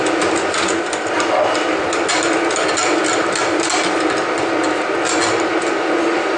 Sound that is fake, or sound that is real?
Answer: real